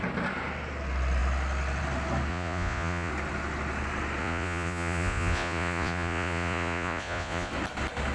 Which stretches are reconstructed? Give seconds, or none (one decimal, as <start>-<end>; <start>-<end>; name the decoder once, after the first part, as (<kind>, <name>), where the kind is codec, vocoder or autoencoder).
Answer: 2.3-3.1 (vocoder, Vocos); 4.2-7.5